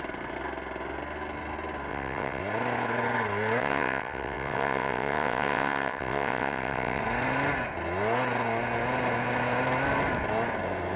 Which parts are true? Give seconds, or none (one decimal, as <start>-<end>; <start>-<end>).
0.0-1.9; 2.4-3.6; 7.0-11.0